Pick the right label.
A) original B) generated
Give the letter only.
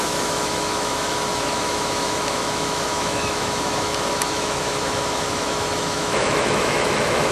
B